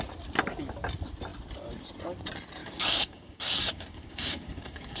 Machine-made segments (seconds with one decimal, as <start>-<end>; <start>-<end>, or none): 2.6-5.0

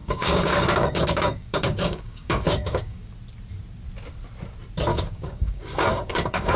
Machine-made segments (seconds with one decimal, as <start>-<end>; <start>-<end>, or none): 0.0-3.1; 4.9-6.6